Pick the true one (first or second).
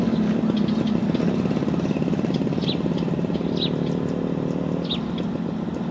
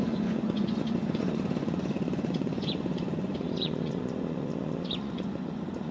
first